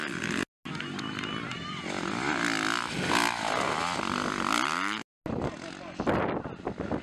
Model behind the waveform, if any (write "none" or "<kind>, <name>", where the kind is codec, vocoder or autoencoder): none